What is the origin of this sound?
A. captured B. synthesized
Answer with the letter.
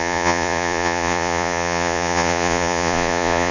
B